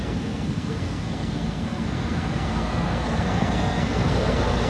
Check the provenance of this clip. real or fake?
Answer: fake